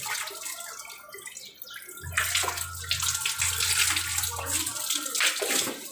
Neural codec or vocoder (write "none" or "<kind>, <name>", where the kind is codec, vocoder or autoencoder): none